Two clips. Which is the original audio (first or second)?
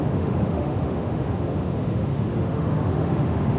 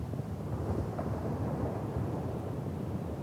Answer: second